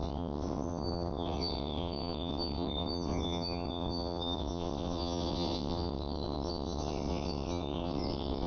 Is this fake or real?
fake